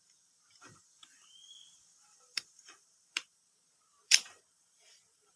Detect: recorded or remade remade